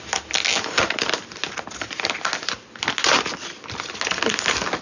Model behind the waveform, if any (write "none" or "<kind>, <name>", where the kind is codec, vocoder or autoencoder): none